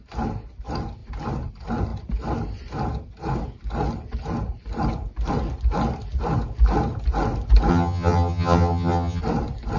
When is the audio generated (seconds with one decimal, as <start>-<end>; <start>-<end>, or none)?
7.7-9.2